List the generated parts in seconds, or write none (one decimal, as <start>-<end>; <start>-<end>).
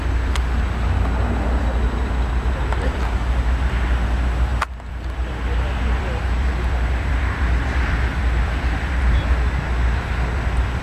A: 4.5-9.1